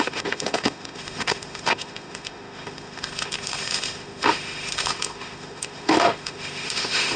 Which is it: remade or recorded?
remade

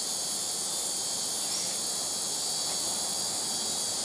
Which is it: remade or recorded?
recorded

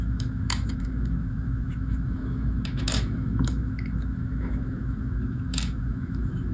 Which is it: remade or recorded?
remade